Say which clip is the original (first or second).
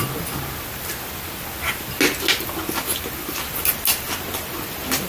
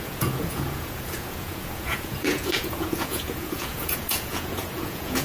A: first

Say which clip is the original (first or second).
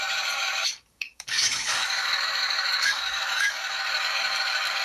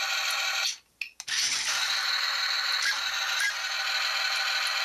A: second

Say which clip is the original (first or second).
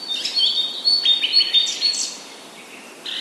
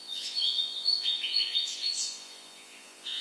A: first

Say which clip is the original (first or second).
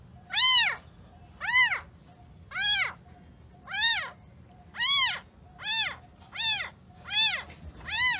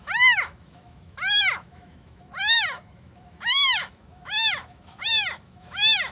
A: first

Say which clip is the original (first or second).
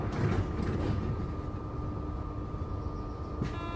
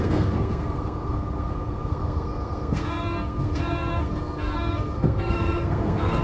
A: first